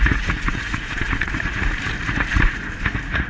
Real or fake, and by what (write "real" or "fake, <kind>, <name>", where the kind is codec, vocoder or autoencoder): fake, vocoder, Vocos